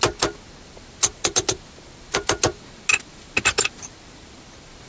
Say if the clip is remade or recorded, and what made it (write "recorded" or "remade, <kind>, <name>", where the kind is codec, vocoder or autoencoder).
recorded